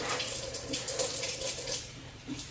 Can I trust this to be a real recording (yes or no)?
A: no